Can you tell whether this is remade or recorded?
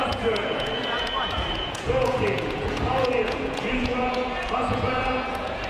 remade